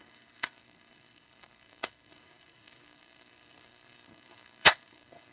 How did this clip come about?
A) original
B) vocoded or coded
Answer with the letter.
B